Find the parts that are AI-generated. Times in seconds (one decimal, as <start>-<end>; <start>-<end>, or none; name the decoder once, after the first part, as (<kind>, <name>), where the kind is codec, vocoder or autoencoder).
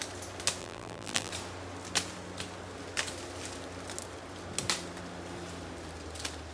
0.6-1.3 (vocoder, BigVGAN v2)